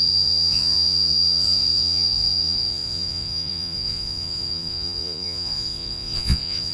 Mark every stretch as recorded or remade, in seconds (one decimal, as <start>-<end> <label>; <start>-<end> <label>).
0.0-6.7 remade